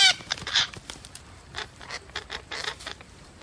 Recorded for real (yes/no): no